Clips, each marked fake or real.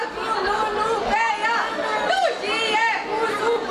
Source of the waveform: real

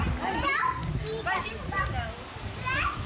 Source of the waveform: real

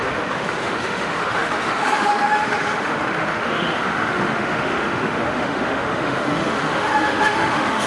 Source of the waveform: fake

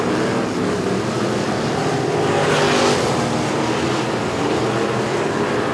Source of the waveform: real